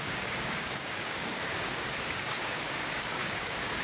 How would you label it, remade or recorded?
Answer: remade